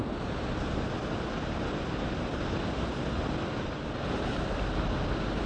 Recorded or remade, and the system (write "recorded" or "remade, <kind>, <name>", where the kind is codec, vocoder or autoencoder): recorded